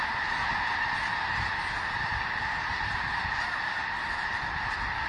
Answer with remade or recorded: recorded